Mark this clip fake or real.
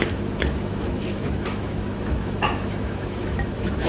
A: fake